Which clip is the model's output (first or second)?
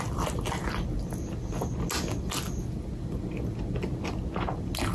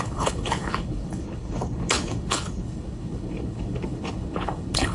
second